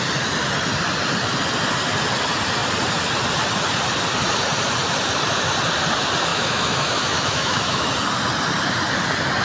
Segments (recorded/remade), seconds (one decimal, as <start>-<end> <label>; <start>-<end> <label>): 0.0-6.3 recorded; 6.3-7.9 remade; 7.9-9.4 recorded